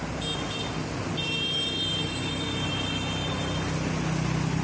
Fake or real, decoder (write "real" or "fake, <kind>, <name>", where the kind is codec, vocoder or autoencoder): real